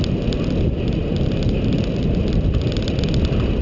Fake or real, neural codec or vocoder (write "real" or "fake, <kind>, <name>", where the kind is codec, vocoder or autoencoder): real